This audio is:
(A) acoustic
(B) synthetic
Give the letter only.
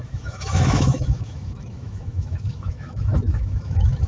B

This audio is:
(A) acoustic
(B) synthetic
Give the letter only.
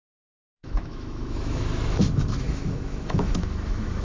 B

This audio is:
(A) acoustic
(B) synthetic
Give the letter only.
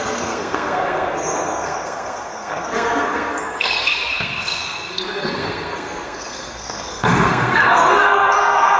B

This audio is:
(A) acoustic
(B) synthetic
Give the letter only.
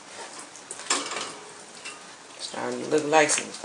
A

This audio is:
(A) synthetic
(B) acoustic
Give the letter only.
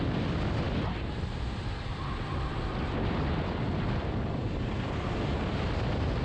B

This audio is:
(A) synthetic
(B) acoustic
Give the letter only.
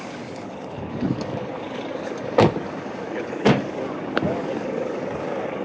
A